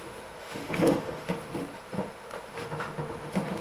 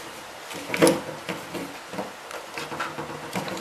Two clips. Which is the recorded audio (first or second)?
second